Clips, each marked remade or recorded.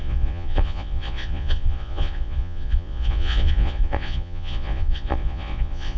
remade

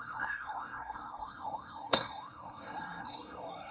remade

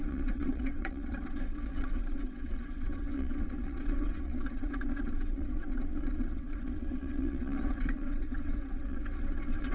remade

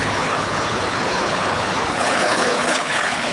remade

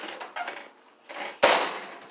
recorded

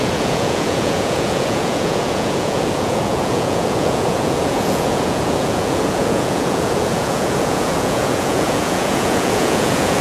remade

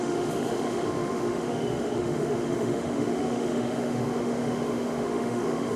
remade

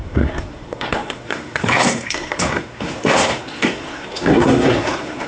remade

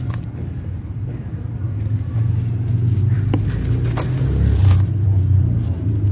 recorded